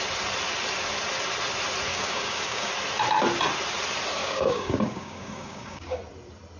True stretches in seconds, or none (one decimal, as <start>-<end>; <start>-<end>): 0.0-1.9; 2.7-4.2; 6.0-6.6

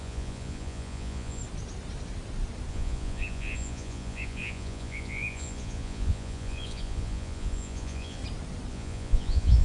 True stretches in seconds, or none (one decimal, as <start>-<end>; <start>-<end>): 1.4-2.7; 8.2-8.7

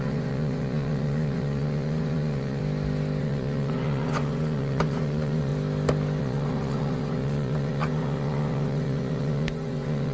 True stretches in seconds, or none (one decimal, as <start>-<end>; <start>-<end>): 2.6-3.2; 5.5-6.2

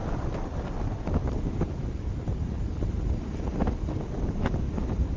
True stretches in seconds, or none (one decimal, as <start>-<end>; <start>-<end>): 0.0-5.2

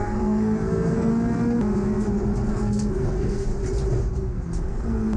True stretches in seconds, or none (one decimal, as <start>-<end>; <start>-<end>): 1.1-2.5; 3.5-4.1

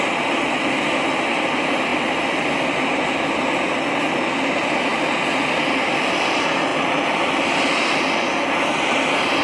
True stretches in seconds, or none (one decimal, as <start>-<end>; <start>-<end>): 0.0-9.4

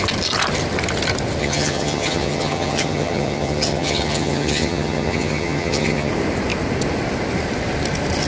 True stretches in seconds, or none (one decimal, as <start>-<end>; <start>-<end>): 0.0-1.4; 6.1-8.3

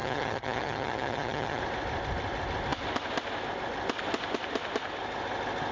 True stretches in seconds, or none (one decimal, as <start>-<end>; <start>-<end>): 1.6-5.7